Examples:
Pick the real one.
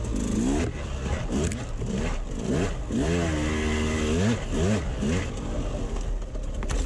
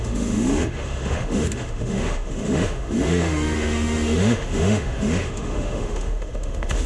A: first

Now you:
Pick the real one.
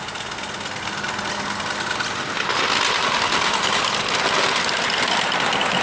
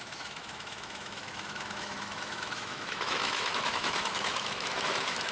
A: first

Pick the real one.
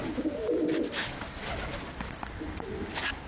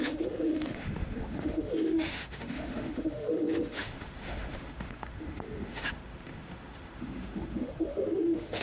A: first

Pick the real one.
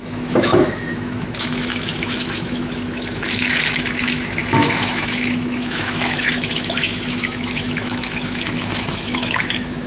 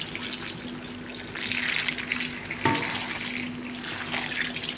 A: second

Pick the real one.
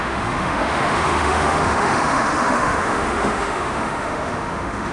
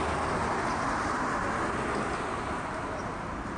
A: second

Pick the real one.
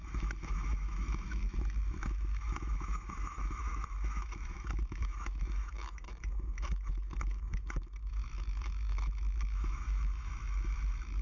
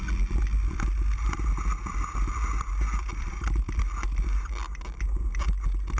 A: second